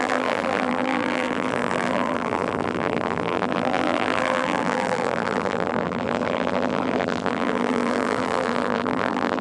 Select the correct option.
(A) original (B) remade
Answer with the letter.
B